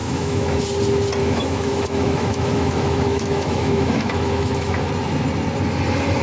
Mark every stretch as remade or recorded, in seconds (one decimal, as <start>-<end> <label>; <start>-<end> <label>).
0.0-0.6 remade; 0.6-1.2 recorded; 1.2-4.9 remade; 4.9-6.2 recorded